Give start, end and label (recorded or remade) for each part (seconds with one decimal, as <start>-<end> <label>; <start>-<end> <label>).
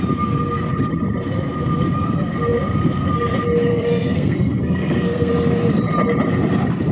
0.0-3.7 recorded; 3.7-5.3 remade; 5.3-6.9 recorded